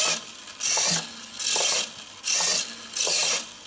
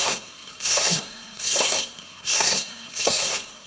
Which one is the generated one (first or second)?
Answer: second